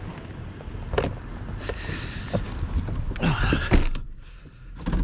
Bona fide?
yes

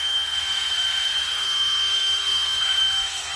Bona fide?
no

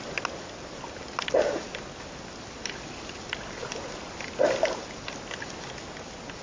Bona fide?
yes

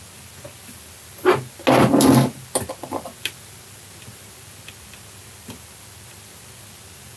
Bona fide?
yes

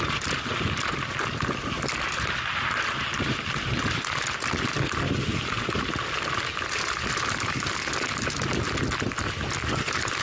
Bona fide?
yes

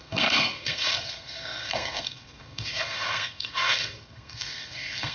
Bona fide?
no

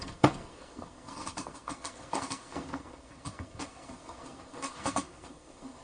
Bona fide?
no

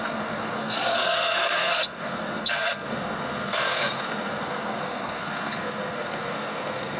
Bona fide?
no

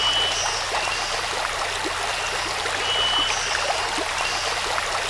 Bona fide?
yes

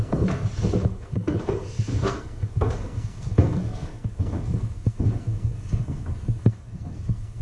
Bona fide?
no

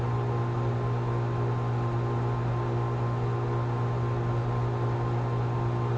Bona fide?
yes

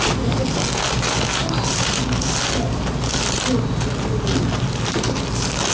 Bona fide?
yes